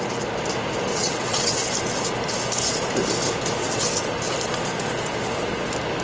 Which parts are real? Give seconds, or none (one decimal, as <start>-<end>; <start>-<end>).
0.0-0.9; 1.5-3.6; 4.2-6.0